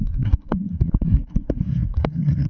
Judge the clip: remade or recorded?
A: remade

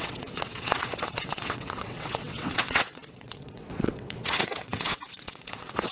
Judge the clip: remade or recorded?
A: remade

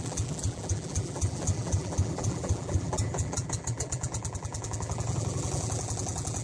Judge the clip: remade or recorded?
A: remade